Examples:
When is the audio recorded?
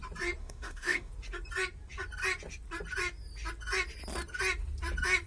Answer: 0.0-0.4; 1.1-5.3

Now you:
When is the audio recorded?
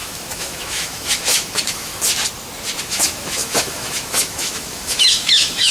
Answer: 1.9-2.8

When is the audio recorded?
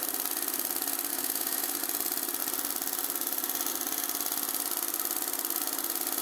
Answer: 0.0-1.1; 1.8-6.2